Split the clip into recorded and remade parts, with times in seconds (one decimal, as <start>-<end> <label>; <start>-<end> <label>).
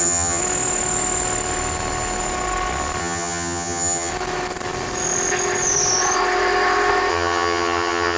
0.0-0.4 remade; 0.4-3.0 recorded; 3.0-4.1 remade; 4.1-7.1 recorded; 7.1-8.2 remade